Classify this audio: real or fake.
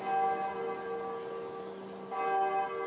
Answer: real